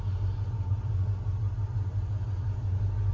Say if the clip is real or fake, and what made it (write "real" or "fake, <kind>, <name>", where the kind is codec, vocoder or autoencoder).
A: real